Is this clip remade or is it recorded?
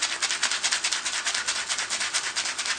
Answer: recorded